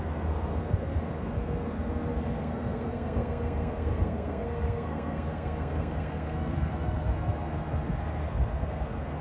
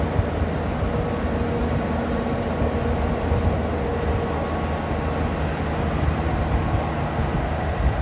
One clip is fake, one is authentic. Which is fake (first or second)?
first